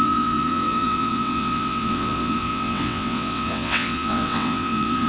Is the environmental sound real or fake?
fake